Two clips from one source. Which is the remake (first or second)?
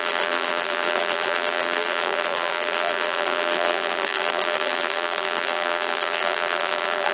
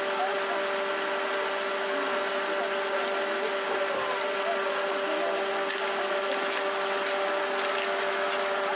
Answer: first